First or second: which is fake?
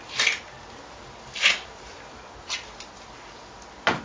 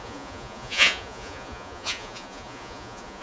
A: second